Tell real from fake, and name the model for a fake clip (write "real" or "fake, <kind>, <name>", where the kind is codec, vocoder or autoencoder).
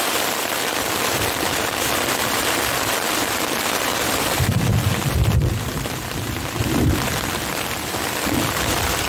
fake, vocoder, BigVGAN v2